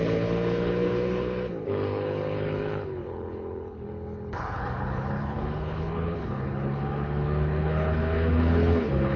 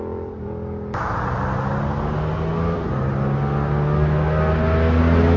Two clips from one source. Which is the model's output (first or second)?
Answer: first